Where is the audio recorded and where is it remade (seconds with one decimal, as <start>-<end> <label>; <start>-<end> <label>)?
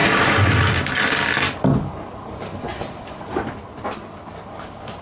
0.0-5.0 recorded